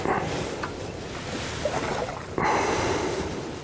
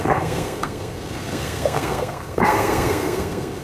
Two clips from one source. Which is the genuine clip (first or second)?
first